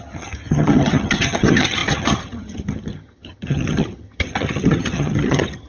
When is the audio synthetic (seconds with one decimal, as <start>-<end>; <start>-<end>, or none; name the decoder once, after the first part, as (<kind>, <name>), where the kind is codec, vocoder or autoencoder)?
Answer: 0.0-5.7 (vocoder, HiFi-GAN)